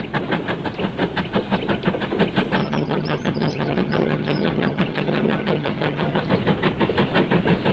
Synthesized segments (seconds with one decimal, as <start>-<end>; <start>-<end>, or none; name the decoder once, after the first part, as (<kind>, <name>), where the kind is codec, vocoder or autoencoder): 2.6-6.3 (vocoder, HiFi-GAN)